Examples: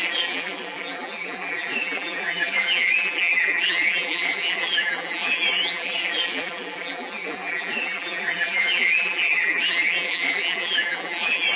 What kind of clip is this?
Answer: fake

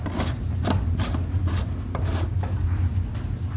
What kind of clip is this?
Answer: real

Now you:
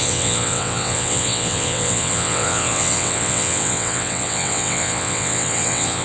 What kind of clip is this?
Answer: fake